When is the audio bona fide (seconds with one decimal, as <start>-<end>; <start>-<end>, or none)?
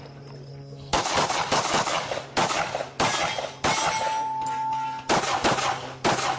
0.0-0.5; 1.0-6.4